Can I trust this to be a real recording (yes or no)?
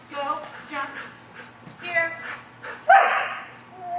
yes